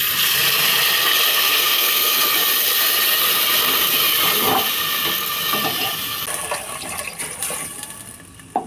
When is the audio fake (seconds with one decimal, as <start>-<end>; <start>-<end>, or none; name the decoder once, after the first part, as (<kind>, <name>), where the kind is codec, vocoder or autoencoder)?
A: 1.3-2.3 (codec, SNAC)